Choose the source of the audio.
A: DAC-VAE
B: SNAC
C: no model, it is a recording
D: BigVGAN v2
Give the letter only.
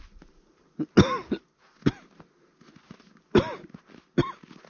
C